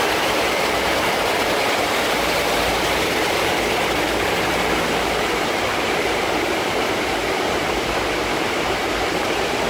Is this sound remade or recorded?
remade